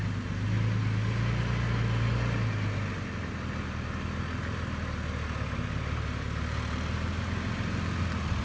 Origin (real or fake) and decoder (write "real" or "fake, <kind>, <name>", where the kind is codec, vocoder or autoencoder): real